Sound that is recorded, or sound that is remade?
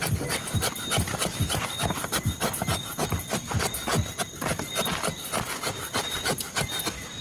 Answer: recorded